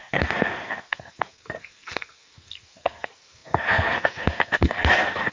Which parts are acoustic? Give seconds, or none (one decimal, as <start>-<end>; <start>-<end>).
none